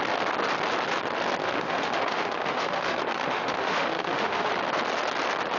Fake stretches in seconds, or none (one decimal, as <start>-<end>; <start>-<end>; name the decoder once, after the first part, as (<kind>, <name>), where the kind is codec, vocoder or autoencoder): 1.4-4.5 (autoencoder, DAC-VAE)